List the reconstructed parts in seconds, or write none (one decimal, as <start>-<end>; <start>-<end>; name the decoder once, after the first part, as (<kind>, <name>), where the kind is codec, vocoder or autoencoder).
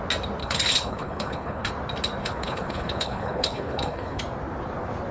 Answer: 0.4-1.7 (codec, HILCodec); 2.2-4.2